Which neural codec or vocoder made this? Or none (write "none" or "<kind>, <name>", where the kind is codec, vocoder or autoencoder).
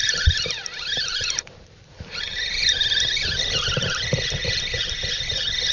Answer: none